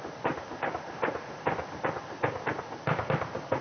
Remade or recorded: recorded